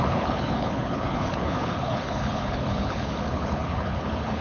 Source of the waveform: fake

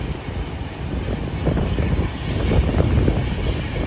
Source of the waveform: real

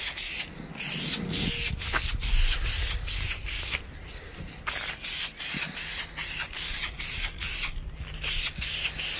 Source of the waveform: real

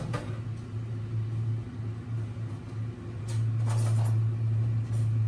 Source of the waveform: real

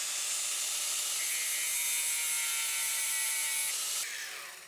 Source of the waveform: real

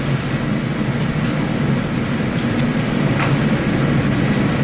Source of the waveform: real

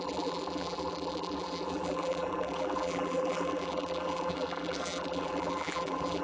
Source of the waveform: fake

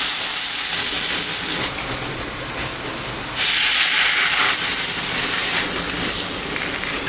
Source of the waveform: real